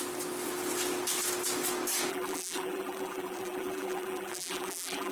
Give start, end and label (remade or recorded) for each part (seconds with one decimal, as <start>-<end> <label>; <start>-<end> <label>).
0.0-2.1 recorded; 2.1-5.1 remade